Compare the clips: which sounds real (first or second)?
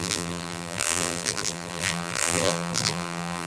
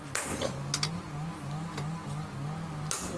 second